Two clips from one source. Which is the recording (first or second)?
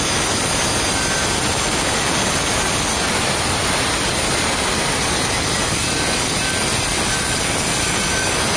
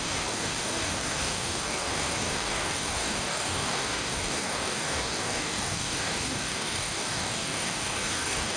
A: first